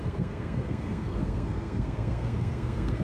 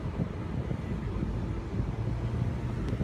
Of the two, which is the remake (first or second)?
first